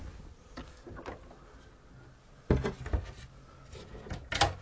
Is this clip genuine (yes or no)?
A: yes